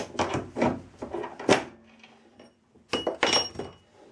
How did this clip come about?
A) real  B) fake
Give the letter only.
A